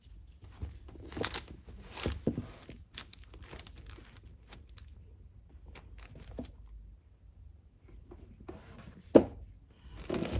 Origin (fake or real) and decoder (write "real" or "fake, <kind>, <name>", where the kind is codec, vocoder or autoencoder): real